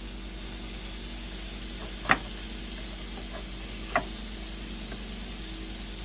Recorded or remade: recorded